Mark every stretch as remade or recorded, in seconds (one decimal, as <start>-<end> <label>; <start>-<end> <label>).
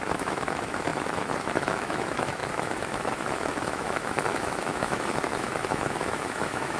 0.0-6.8 remade